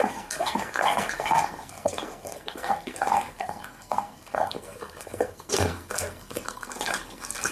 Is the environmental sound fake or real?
fake